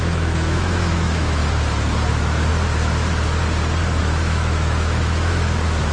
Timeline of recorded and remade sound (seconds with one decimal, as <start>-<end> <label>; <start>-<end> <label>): 0.0-1.4 remade; 1.4-2.1 recorded; 2.1-2.5 remade; 2.5-4.0 recorded; 4.0-5.9 remade